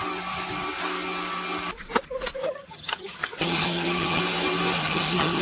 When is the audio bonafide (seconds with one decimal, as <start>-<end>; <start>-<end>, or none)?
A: 0.0-2.4; 4.2-4.8